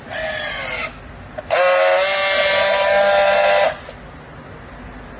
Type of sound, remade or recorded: recorded